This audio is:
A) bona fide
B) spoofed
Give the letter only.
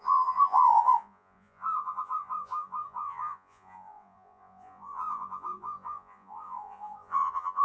B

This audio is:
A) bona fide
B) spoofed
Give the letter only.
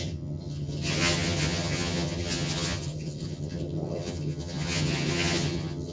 B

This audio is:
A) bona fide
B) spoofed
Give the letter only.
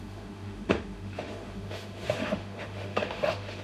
B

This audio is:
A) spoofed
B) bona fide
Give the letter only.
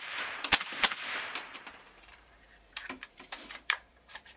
A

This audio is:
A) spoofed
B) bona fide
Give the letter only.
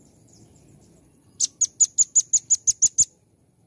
B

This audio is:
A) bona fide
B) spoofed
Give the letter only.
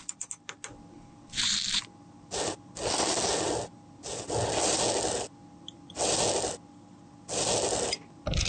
A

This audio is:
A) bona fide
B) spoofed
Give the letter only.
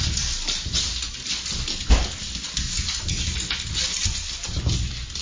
A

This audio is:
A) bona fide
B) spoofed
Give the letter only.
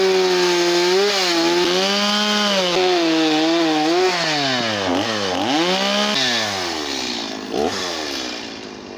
A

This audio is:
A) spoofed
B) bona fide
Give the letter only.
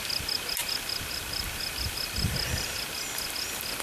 B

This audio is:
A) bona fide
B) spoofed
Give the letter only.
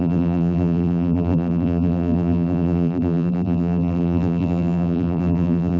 B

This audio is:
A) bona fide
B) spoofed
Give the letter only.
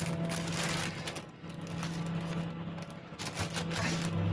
A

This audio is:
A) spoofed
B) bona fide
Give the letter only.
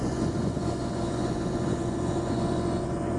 A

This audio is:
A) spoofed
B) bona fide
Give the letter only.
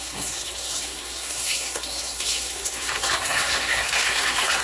A